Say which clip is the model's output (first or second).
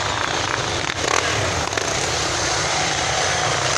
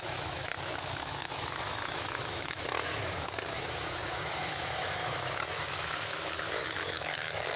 second